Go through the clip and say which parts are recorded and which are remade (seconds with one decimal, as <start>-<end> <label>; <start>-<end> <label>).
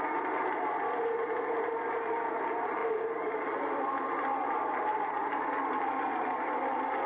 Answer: 0.0-7.1 recorded